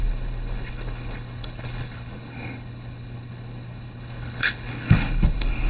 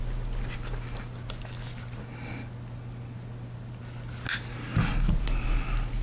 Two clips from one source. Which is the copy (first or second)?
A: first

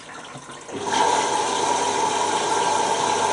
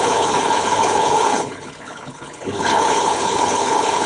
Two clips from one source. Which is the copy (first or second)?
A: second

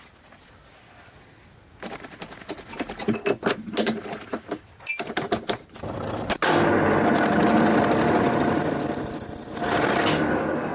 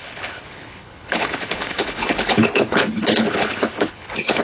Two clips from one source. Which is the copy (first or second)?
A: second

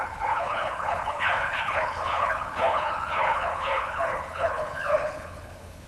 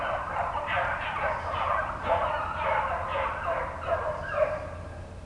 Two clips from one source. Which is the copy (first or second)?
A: first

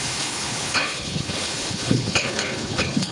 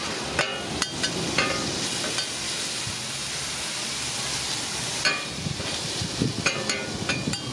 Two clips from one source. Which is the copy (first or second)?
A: first